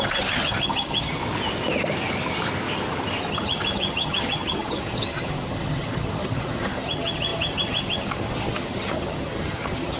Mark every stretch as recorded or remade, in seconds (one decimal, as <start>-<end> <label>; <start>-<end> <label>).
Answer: 0.0-1.2 remade; 1.2-3.3 recorded; 3.3-10.0 remade